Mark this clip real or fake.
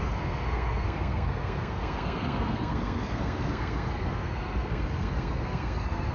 fake